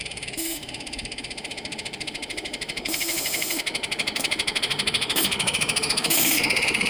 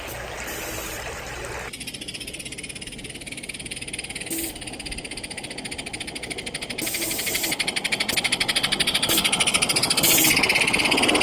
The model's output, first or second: first